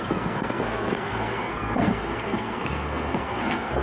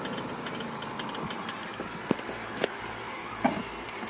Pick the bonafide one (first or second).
second